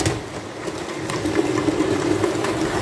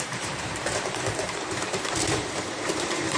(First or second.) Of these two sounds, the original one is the first